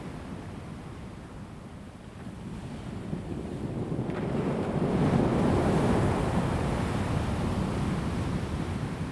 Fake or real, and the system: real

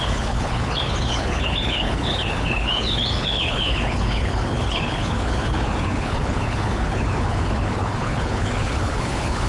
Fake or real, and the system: fake, codec, HILCodec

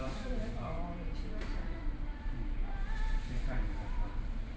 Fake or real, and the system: fake, vocoder, BigVGAN v2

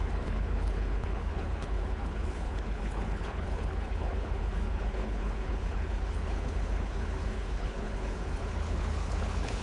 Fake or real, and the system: fake, codec, HILCodec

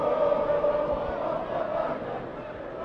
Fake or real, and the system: real